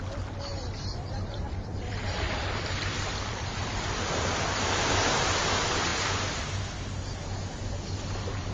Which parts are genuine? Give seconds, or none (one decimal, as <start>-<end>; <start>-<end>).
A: 0.0-0.5; 4.5-5.9; 6.6-8.5